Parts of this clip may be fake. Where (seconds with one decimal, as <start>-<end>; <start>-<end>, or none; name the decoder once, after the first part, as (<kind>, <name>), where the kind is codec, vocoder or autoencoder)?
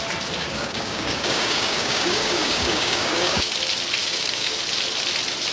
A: 0.4-3.5 (codec, DAC); 4.0-4.6